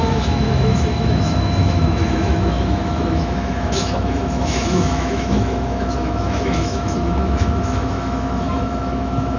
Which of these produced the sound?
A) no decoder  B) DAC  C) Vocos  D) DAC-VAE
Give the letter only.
D